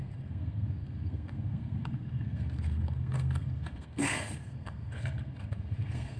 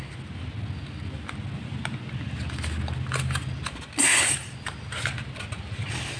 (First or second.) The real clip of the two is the second